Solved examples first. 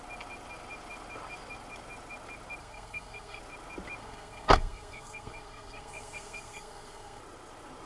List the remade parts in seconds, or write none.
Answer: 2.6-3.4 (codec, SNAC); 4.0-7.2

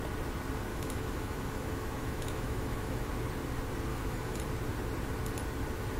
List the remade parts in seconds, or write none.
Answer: 0.7-3.1 (autoencoder, DAC-VAE); 3.9-4.4

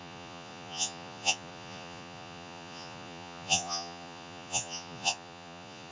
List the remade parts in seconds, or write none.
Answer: 0.0-5.9 (vocoder, Vocos)

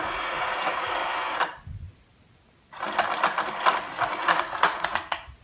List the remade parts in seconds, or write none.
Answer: 0.0-1.0 (vocoder, Vocos); 4.2-5.4